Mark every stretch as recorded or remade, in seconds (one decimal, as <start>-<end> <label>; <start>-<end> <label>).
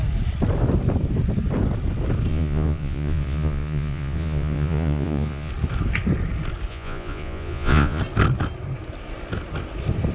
0.0-2.3 recorded; 2.3-5.5 remade; 5.5-6.7 recorded; 6.7-8.0 remade; 8.0-10.1 recorded